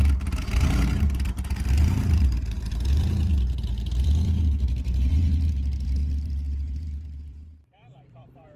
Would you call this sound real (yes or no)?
no